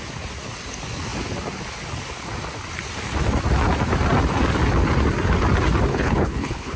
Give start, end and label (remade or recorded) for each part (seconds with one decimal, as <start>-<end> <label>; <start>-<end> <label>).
0.0-5.9 recorded; 5.9-6.8 remade